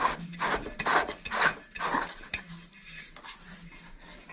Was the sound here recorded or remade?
recorded